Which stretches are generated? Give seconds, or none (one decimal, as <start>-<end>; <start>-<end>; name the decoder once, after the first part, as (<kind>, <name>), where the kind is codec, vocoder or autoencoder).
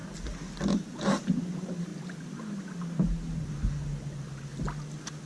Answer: none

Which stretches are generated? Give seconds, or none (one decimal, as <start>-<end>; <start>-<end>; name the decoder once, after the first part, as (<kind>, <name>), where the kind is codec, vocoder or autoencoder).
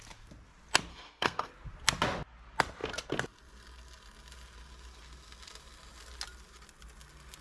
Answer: 0.9-1.5 (codec, SNAC)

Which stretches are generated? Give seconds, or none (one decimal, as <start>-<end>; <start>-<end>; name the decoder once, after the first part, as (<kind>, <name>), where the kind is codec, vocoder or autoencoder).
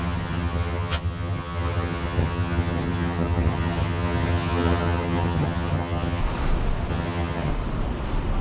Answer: 0.0-6.2 (vocoder, HiFi-GAN); 6.9-7.5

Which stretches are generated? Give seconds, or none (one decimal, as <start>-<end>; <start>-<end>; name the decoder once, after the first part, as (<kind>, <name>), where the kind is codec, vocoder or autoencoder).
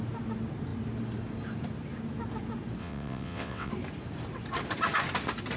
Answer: 2.8-3.7 (vocoder, WaveNeXt)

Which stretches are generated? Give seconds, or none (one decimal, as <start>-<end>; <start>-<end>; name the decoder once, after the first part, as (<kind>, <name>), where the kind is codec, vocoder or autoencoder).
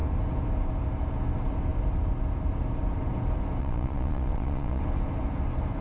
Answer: 3.6-4.8 (vocoder, Vocos)